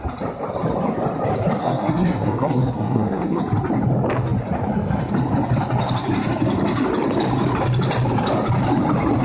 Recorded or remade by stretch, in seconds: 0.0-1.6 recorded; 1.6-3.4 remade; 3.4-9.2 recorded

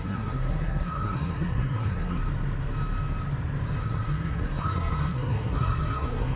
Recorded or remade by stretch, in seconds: 0.0-2.2 remade; 2.2-3.8 recorded; 3.8-6.4 remade

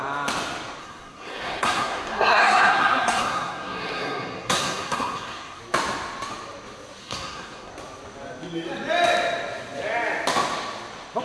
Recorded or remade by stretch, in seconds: 0.0-0.8 recorded; 0.8-5.6 remade; 5.6-7.0 recorded; 7.0-7.7 remade; 7.7-11.2 recorded

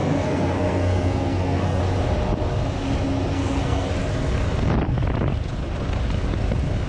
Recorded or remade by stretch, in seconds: 0.0-1.8 remade; 1.8-3.3 recorded; 3.3-3.9 remade; 3.9-6.9 recorded